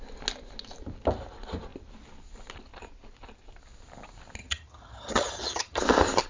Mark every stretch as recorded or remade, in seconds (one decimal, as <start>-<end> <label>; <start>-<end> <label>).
0.0-4.4 recorded; 4.4-5.8 remade; 5.8-6.3 recorded